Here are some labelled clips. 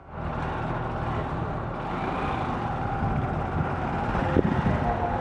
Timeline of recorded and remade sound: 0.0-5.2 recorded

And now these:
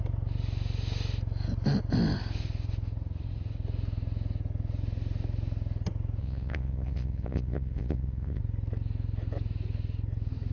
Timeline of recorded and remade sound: 0.0-6.2 recorded; 6.2-8.4 remade; 8.4-10.5 recorded

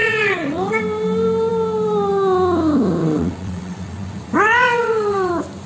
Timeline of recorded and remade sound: 0.0-0.8 remade; 0.8-3.0 recorded; 3.0-5.3 remade; 5.3-5.7 recorded

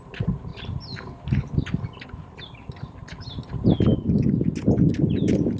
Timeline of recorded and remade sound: 0.0-5.6 recorded